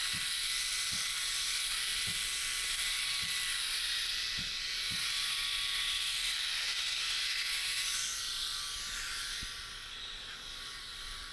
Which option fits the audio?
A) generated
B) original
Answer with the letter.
A